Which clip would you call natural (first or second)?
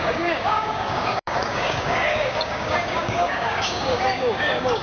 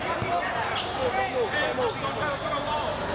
second